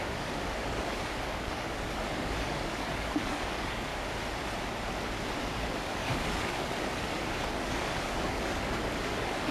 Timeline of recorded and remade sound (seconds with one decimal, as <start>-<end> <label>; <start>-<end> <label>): 0.0-3.9 remade; 3.9-5.4 recorded; 5.4-9.5 remade